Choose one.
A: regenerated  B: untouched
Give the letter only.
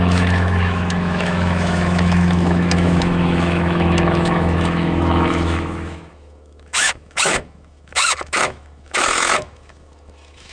A